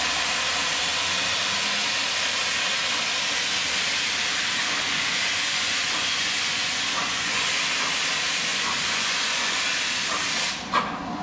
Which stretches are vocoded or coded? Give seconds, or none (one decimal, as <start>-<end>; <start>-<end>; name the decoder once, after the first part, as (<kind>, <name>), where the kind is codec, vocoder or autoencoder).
4.6-7.5 (vocoder, Vocos); 8.5-9.6